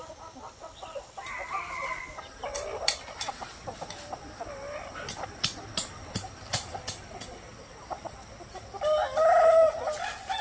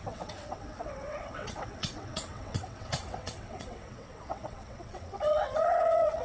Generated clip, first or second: second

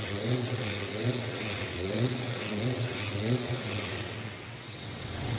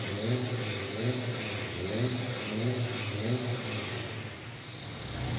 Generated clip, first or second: first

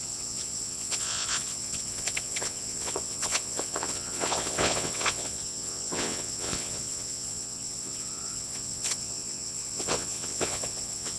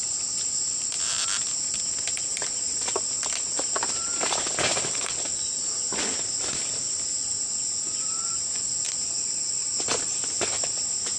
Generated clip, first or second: first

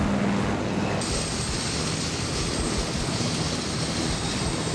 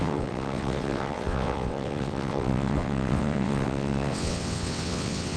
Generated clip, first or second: second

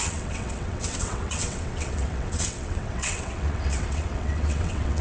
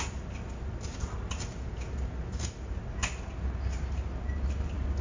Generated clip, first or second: first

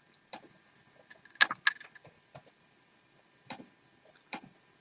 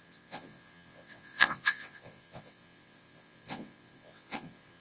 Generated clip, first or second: second